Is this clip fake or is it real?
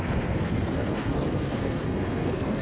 fake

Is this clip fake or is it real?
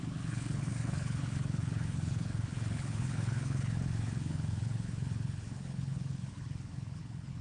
fake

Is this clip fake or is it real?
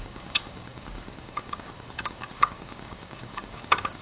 fake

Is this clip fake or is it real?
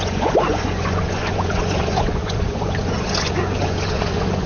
fake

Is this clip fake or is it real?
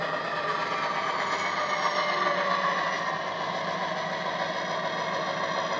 real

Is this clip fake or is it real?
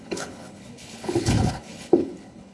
fake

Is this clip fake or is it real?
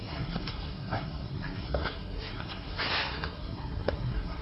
fake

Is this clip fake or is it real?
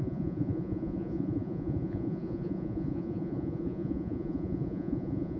fake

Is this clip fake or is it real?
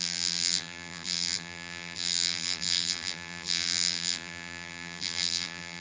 fake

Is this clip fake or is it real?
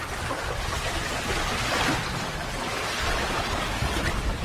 real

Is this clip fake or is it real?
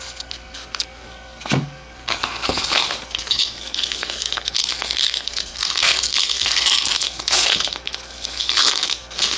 fake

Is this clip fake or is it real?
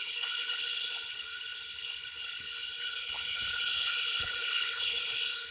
fake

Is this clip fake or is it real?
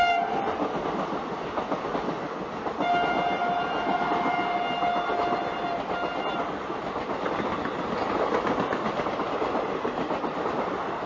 real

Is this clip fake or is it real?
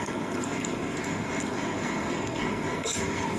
fake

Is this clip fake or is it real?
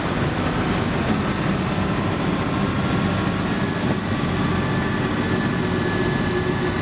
real